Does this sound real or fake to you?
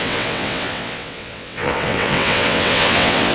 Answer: fake